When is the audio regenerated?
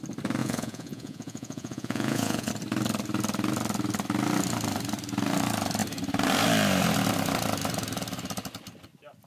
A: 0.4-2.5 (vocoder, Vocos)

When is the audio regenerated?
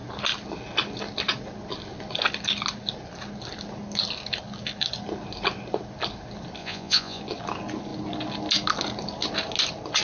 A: 6.6-7.2 (vocoder, Vocos)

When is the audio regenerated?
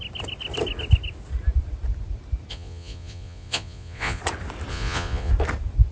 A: 2.5-4.2 (vocoder, Vocos); 4.7-5.3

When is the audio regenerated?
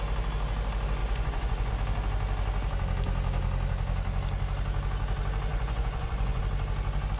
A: 1.0-1.7 (vocoder, Vocos); 5.5-6.4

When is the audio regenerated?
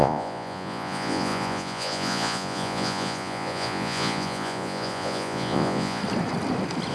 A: 0.0-6.0 (vocoder, Vocos)